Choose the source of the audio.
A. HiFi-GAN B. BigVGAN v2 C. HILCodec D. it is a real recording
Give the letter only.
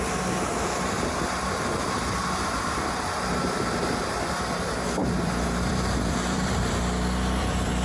B